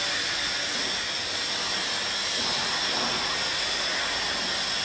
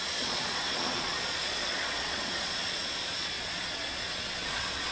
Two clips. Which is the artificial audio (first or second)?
second